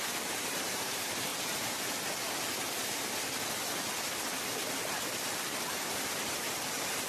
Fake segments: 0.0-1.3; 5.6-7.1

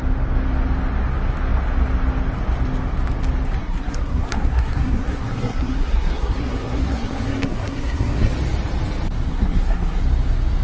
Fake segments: 3.6-8.3; 9.3-10.0

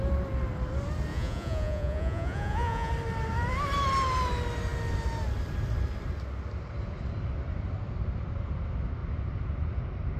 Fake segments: 1.1-2.9

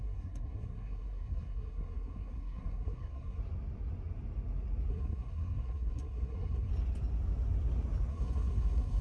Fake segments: 0.0-3.4; 4.9-6.7; 8.1-9.0

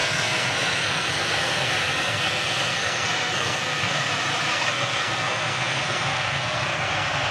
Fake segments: 0.0-4.1; 4.5-7.3

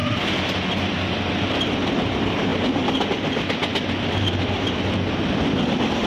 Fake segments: none

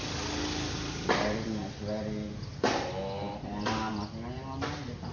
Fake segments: 0.0-1.6; 3.9-5.1